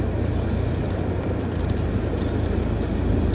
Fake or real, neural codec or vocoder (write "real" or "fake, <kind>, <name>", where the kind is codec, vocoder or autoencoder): real